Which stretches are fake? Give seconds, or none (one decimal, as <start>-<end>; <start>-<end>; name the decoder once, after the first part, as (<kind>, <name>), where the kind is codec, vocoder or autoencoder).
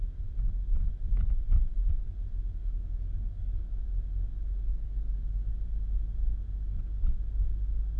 2.6-3.8 (codec, DAC); 4.7-5.5